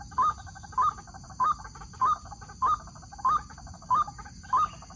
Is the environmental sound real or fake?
real